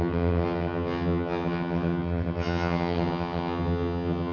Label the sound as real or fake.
fake